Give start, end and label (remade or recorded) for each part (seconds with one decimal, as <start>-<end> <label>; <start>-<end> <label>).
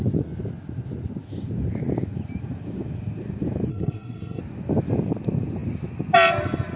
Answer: 0.0-3.7 recorded; 3.7-4.4 remade; 4.4-6.8 recorded